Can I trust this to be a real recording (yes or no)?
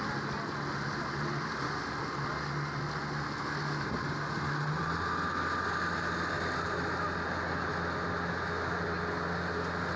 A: yes